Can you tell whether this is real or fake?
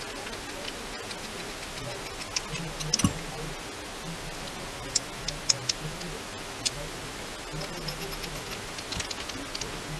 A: real